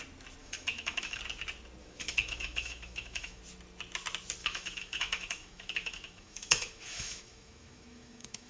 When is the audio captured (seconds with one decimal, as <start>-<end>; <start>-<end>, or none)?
0.0-0.4; 1.2-1.8; 3.4-4.4